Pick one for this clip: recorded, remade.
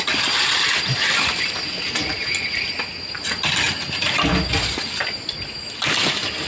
recorded